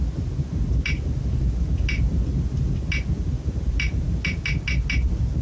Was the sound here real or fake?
real